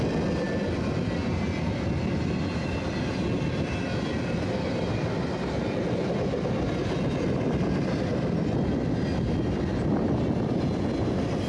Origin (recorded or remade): recorded